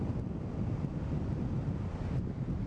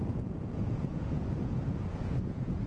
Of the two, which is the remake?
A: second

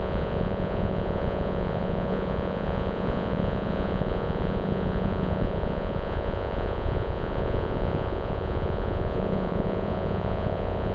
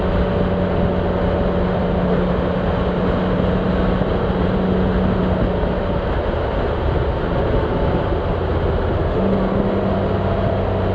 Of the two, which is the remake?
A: first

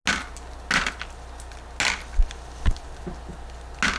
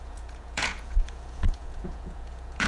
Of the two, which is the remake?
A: second